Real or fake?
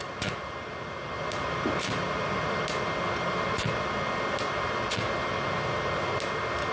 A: real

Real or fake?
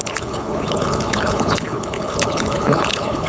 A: fake